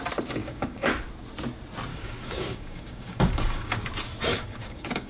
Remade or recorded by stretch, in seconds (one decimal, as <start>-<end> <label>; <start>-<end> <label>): 0.0-0.4 recorded; 0.4-0.9 remade; 0.9-1.9 recorded; 1.9-3.9 remade; 3.9-4.3 recorded; 4.3-5.1 remade